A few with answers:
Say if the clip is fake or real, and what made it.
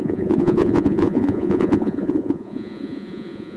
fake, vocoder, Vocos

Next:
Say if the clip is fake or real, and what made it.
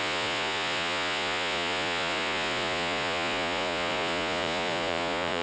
fake, vocoder, Vocos